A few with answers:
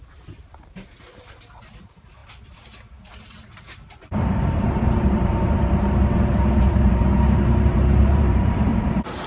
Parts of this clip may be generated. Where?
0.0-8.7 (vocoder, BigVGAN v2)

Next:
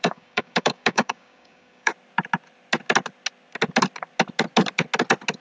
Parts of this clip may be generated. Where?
0.0-1.9 (codec, DAC)

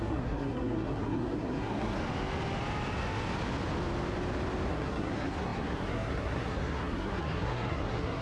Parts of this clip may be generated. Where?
0.0-2.0 (codec, SNAC); 4.7-8.2